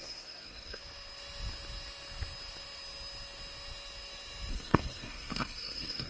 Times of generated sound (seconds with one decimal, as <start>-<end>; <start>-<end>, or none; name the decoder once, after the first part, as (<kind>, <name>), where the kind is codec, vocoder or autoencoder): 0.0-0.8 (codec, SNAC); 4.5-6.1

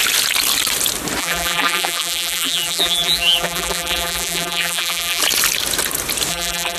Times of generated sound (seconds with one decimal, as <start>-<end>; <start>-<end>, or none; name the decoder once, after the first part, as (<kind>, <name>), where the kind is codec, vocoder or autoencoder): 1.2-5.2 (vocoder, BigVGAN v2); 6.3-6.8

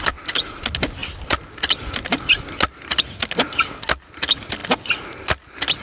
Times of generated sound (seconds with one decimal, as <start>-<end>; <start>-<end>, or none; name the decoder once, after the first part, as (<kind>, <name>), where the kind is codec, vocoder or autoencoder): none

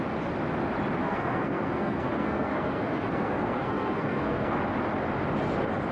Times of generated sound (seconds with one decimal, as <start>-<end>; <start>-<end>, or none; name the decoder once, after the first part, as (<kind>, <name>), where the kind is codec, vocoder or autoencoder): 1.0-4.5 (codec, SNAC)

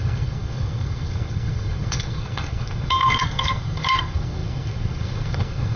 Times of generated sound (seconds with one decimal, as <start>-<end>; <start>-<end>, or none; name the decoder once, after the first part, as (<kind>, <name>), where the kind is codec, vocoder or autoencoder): 0.0-5.8 (codec, SNAC)

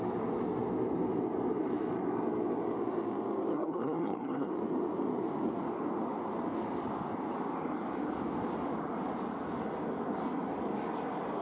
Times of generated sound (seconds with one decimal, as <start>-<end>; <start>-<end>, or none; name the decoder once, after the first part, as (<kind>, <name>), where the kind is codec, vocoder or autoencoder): 3.5-4.5 (codec, SNAC)